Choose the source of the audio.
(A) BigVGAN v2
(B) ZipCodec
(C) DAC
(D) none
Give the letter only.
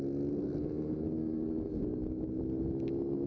D